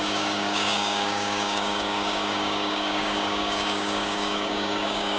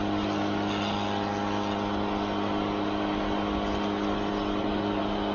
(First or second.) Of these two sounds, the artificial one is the first